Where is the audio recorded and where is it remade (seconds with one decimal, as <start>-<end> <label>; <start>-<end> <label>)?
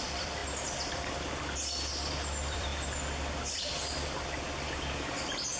0.0-0.4 remade; 0.4-2.1 recorded; 2.1-2.7 remade; 2.7-5.6 recorded